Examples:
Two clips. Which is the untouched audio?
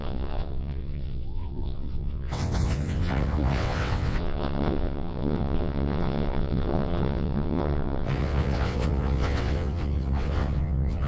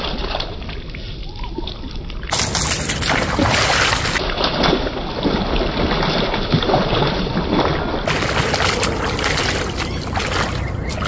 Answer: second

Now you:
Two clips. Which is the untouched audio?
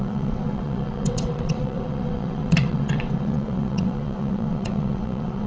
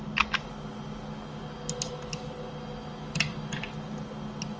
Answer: second